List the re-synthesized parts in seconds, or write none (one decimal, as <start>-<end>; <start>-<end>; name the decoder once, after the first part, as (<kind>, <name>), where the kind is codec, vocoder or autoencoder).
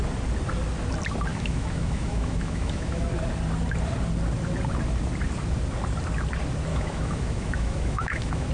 1.3-3.0 (autoencoder, DAC-VAE); 6.7-8.5